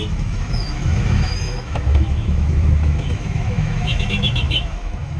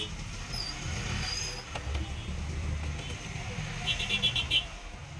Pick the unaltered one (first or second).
second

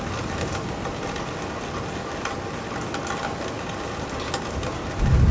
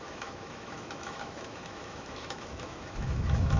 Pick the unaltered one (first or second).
first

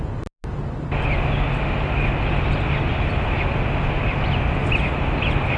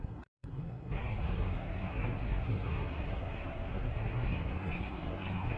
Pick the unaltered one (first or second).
first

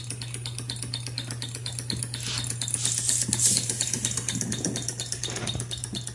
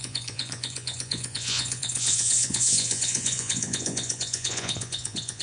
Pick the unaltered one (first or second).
first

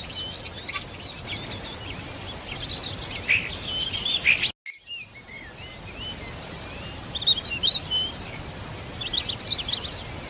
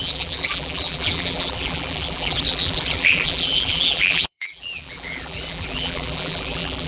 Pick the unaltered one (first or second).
first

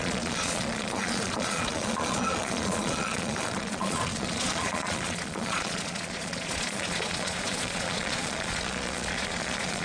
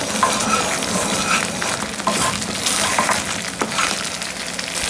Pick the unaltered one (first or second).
second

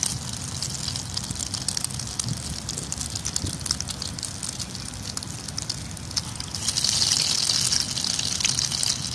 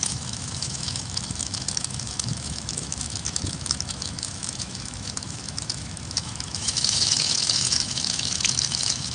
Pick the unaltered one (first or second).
first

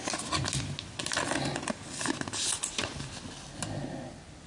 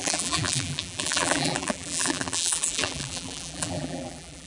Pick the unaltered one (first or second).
first